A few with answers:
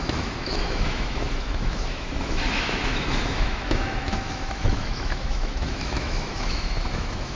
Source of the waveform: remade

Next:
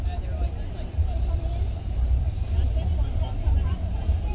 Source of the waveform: remade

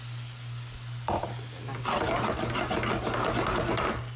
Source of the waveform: recorded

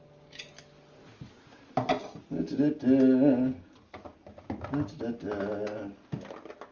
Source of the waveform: recorded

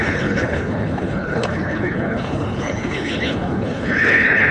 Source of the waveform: remade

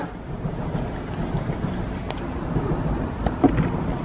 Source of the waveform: recorded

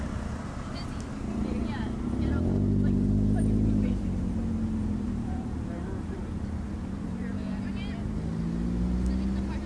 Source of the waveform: recorded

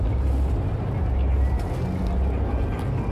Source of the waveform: recorded